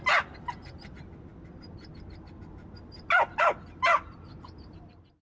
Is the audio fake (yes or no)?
no